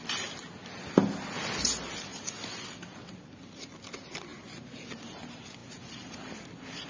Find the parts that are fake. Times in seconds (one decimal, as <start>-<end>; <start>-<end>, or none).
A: none